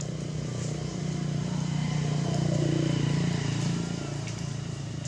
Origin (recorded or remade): recorded